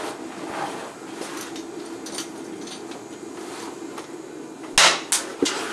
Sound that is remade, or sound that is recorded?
recorded